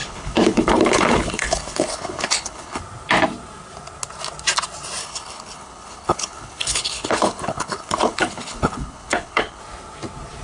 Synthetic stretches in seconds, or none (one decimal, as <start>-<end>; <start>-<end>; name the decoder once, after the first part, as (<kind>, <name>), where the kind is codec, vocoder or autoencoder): 0.0-2.8 (codec, HILCodec); 5.0-9.6